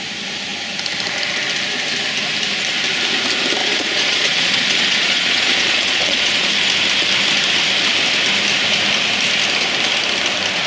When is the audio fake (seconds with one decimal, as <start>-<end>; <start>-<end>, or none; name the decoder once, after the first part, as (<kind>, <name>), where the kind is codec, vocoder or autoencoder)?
3.6-6.5 (vocoder, Vocos)